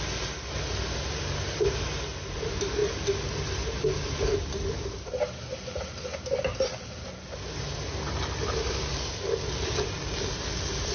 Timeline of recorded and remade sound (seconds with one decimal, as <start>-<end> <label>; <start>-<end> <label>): 0.0-10.9 recorded